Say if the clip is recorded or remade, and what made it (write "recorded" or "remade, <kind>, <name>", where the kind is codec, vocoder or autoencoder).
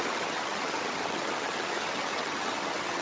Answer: remade, vocoder, HiFi-GAN